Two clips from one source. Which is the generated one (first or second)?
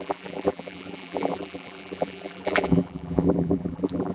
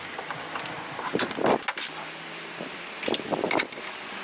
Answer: first